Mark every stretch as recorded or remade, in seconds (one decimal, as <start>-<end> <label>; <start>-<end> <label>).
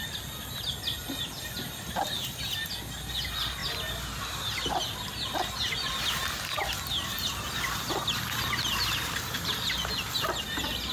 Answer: 0.0-10.9 recorded